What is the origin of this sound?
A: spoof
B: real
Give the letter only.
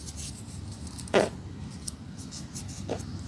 B